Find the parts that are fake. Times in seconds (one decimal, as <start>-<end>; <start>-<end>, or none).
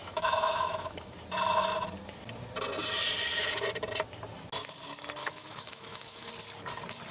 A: 0.0-1.1; 5.2-6.3